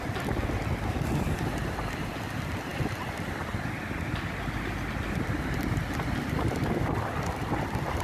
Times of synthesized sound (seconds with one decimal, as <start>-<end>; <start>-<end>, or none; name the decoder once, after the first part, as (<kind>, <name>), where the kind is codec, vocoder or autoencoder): none